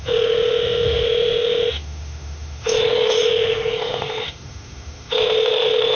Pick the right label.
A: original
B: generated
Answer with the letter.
B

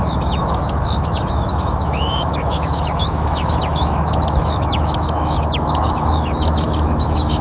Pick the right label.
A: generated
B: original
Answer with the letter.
A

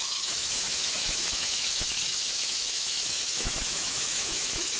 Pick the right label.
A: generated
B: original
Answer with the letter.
A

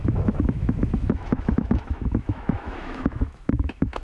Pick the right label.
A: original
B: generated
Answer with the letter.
B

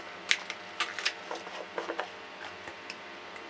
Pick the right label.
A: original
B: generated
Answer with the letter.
A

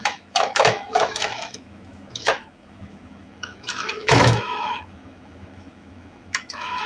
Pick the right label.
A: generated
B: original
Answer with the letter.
A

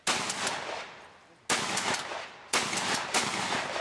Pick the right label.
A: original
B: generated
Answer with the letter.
A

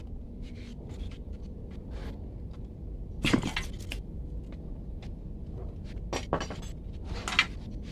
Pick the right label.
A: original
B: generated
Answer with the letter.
A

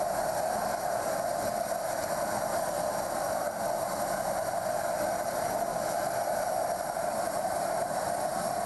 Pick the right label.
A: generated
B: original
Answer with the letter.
B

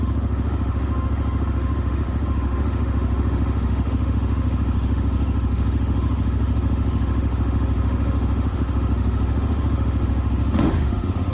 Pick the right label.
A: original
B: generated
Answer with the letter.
B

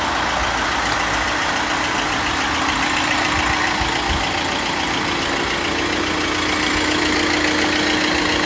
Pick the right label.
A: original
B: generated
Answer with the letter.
A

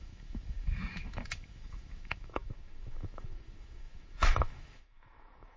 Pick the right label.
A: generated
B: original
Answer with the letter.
A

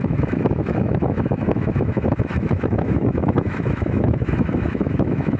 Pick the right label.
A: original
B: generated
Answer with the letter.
B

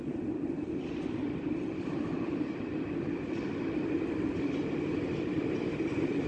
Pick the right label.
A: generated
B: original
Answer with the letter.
B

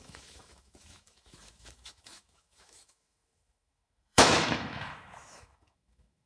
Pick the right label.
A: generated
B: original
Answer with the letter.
A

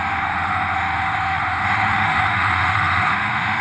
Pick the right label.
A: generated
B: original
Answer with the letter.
A